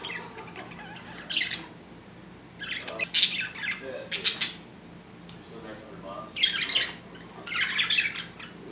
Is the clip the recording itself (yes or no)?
yes